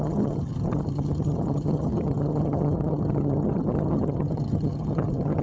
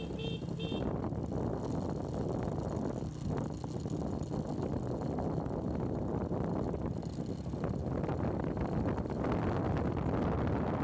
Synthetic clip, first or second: first